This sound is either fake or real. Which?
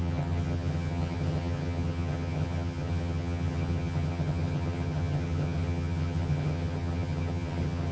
fake